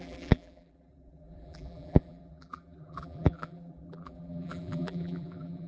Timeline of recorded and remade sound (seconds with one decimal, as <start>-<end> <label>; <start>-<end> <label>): 0.0-5.7 remade